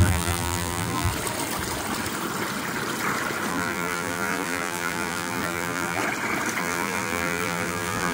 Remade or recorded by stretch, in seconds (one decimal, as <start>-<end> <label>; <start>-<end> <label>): 0.0-1.1 remade; 1.1-3.5 recorded; 3.5-6.0 remade; 6.0-6.6 recorded; 6.6-8.1 remade